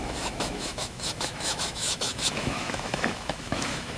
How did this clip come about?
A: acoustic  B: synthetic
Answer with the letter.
B